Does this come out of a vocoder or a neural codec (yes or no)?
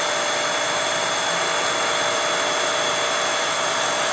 no